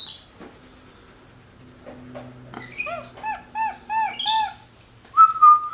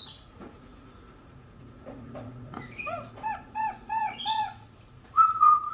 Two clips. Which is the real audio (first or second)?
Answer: first